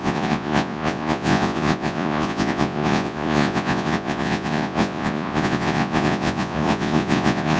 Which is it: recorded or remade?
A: remade